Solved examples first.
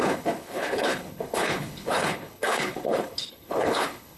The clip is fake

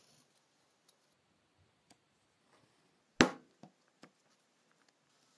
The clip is real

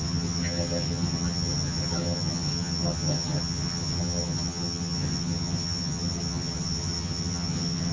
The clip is fake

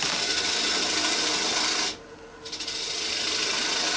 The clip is real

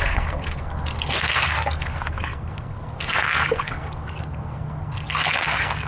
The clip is fake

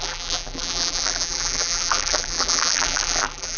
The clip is fake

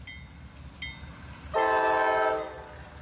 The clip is real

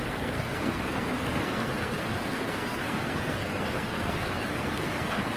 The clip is fake